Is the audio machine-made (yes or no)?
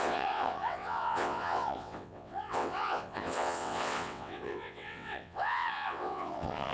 yes